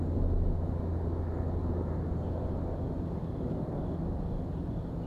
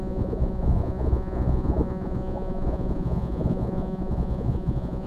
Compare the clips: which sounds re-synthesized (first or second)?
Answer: second